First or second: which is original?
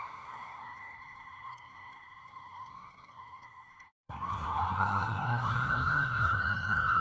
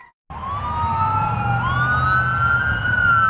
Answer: second